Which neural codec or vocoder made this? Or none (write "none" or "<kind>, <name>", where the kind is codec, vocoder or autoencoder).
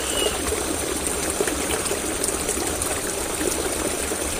none